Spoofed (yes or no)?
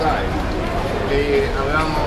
no